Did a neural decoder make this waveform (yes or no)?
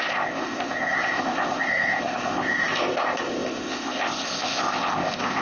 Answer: yes